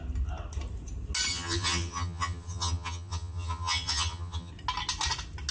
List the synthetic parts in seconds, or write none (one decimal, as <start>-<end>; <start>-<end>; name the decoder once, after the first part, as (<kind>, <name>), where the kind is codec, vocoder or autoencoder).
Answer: 1.3-4.5 (vocoder, HiFi-GAN)